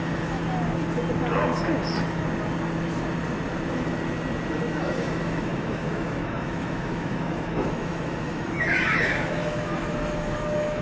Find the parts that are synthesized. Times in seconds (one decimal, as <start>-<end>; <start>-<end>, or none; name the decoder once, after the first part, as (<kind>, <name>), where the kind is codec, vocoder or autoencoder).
0.0-0.4 (autoencoder, DAC-VAE); 4.8-10.8